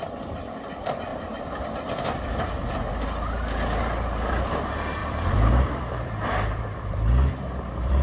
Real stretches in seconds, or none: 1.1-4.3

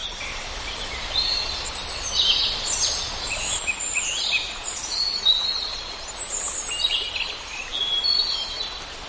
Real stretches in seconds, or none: 0.5-3.5; 5.0-5.7; 7.1-9.1

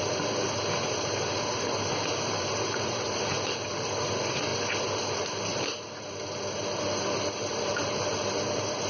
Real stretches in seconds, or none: 4.5-5.1; 5.5-7.5

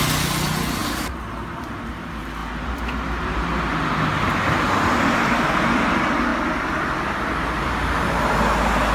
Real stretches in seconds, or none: 0.0-0.8; 1.9-8.9

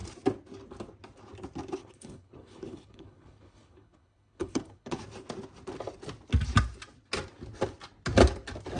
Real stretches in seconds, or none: 0.0-1.8; 5.0-8.8